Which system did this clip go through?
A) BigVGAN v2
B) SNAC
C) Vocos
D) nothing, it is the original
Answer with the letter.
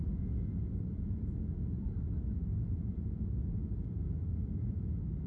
C